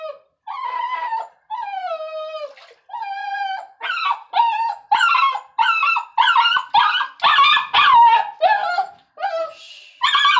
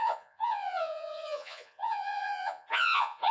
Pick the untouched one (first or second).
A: first